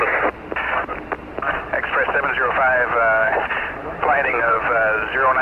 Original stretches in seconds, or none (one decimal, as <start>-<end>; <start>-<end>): 0.0-3.2; 4.6-5.4

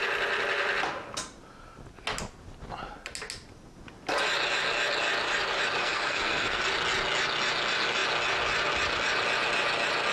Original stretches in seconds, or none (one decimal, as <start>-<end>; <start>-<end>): 0.0-5.8; 6.6-10.1

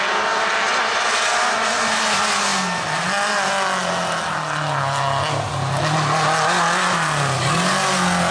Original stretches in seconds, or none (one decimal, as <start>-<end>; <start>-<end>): 0.0-8.3

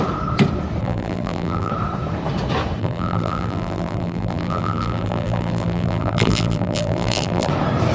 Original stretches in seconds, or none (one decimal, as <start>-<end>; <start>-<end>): 0.0-0.8; 1.7-2.8; 7.5-7.9

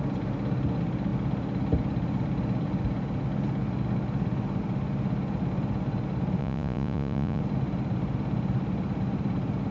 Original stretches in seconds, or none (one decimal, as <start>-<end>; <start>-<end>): 0.0-6.4; 7.4-9.7

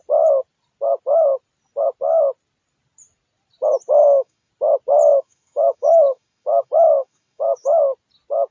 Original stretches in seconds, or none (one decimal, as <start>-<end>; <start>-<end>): 0.0-4.0; 4.5-5.1; 7.8-8.5